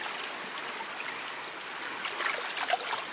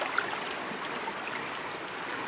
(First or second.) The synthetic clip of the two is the second